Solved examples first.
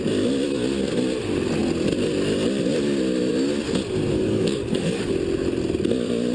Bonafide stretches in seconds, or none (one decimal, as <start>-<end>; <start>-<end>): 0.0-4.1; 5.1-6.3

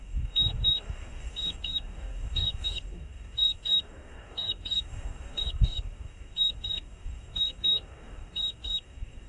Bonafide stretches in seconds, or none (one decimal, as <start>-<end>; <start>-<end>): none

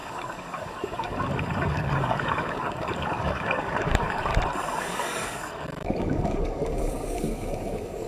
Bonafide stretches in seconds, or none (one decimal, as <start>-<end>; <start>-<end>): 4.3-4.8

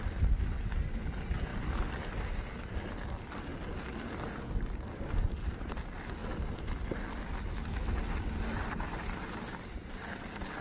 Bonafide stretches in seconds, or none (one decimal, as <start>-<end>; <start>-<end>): 0.0-10.6

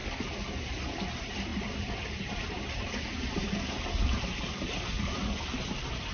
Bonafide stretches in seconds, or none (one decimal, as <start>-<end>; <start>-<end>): 0.0-6.1